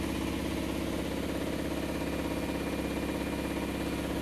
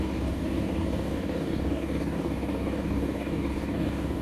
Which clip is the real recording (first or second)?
first